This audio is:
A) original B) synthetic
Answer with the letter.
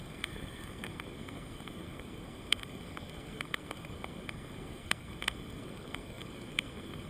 B